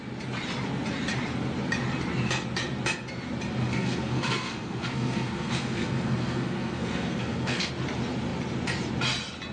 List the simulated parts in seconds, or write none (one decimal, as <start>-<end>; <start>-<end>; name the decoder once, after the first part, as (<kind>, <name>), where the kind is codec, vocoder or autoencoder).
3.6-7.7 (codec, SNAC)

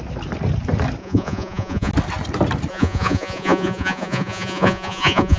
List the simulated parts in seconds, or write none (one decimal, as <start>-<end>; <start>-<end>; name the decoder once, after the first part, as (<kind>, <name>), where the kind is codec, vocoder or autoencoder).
1.0-1.9 (vocoder, Vocos); 2.7-5.4

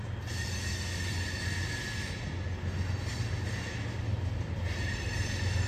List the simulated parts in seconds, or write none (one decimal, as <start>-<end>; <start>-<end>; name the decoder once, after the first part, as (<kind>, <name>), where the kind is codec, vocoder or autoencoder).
none

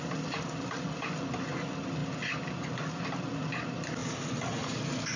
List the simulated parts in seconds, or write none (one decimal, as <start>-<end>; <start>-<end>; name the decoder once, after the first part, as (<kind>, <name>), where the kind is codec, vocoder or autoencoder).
none

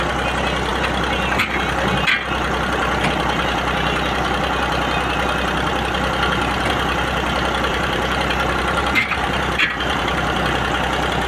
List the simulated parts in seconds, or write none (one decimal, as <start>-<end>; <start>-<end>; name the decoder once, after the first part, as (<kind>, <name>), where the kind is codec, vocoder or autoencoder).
7.7-10.0 (vocoder, BigVGAN v2)